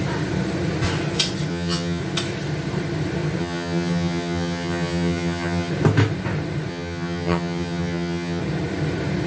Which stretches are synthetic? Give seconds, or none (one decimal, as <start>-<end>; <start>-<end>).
1.5-2.0; 3.4-5.7; 6.7-8.4